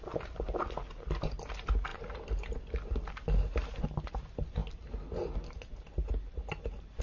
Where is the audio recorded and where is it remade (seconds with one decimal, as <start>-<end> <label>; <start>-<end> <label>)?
0.0-7.0 recorded